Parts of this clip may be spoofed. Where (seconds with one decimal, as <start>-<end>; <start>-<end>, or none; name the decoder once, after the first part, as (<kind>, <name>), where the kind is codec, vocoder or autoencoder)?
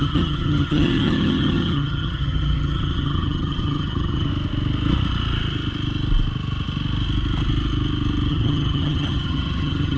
0.0-4.3 (vocoder, HiFi-GAN); 8.3-10.0